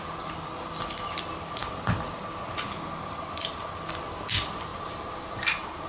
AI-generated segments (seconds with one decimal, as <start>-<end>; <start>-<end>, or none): 4.7-5.9

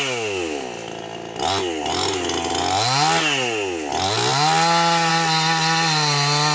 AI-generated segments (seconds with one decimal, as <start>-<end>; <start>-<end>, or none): none

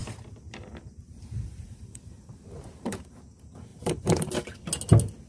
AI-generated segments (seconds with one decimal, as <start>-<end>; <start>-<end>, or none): 0.0-3.1; 3.7-4.3

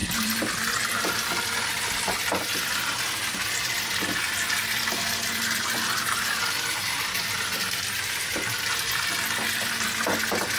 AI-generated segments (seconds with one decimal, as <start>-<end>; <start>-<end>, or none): none

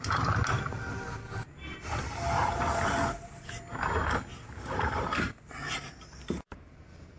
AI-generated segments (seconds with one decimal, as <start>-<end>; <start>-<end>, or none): 4.3-5.2

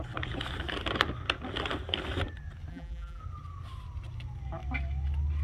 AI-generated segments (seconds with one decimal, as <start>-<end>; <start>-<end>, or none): 2.7-3.2

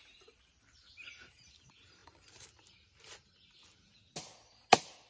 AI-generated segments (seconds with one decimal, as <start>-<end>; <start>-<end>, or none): none

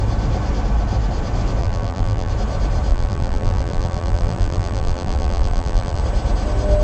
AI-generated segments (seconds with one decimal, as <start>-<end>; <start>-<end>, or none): 1.6-2.3; 2.9-6.0